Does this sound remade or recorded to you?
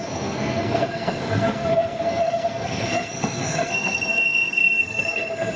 remade